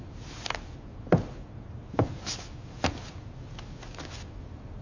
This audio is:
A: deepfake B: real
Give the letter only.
B